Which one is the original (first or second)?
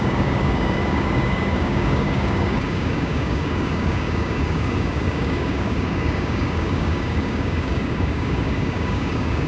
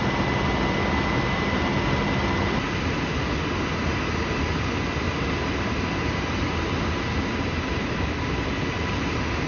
second